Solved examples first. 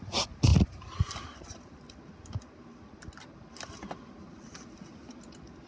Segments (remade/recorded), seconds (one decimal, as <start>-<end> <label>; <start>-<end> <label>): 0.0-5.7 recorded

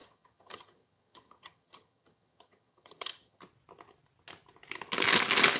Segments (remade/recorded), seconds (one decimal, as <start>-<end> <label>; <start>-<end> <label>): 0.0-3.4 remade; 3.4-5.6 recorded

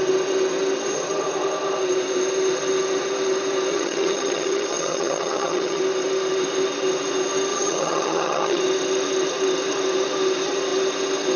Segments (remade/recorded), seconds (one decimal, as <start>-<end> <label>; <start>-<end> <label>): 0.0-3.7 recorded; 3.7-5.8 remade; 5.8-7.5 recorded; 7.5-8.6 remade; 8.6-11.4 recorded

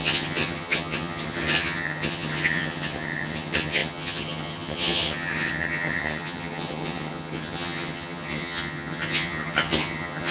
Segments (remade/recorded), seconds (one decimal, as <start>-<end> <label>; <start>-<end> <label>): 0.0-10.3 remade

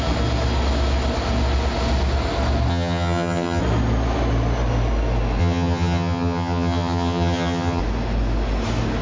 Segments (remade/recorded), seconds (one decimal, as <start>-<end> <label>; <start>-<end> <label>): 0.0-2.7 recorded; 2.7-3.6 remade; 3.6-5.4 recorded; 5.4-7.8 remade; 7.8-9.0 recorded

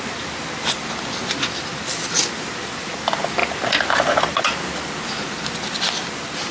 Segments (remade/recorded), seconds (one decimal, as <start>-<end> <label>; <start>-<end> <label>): 0.0-6.5 recorded

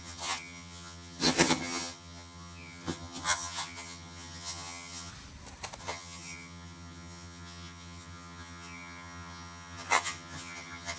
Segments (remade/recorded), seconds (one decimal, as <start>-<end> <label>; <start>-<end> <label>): 0.0-5.1 remade; 5.1-5.8 recorded; 5.8-11.0 remade